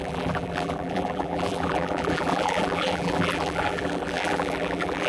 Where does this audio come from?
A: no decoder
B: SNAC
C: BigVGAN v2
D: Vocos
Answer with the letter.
C